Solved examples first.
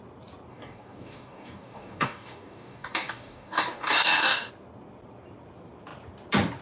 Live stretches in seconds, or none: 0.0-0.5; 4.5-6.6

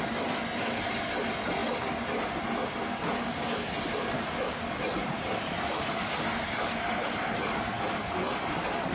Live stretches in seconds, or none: 0.0-4.9; 8.0-8.9